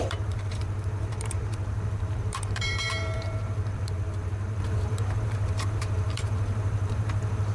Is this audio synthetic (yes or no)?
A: yes